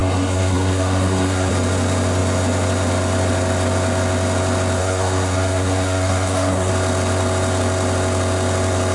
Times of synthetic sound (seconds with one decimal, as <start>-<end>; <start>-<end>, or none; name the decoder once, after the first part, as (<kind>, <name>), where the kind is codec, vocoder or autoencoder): 0.0-1.5 (codec, SNAC); 4.8-6.7